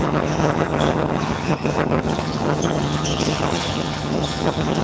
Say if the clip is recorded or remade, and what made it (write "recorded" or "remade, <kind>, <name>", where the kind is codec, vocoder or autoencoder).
remade, vocoder, HiFi-GAN